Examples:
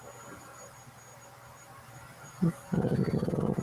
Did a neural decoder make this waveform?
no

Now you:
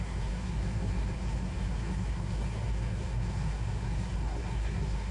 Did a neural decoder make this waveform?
yes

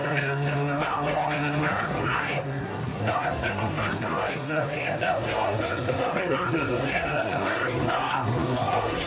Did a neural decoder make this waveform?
yes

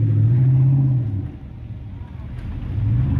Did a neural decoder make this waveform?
no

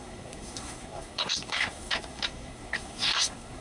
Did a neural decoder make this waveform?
yes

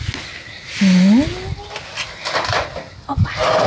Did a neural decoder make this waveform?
no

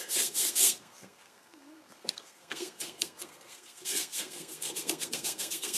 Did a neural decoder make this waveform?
yes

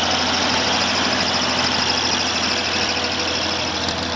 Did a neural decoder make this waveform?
no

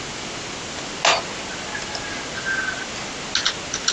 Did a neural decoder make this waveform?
no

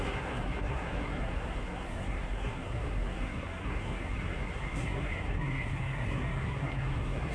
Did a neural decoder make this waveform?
yes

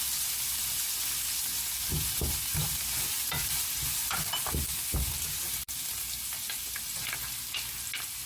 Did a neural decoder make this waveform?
no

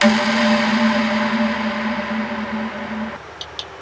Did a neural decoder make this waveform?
no